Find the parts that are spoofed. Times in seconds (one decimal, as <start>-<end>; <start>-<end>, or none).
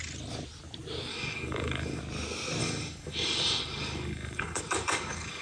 1.1-2.0; 2.6-5.4